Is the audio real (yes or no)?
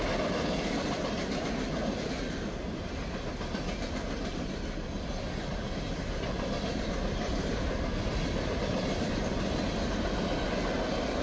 yes